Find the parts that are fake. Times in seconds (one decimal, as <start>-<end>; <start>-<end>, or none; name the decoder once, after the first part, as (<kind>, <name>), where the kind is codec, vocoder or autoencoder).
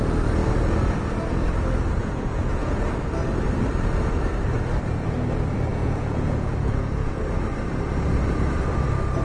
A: 2.0-2.8 (vocoder, Vocos); 5.7-7.2